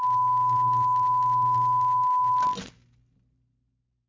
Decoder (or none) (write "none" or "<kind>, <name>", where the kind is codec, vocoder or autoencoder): none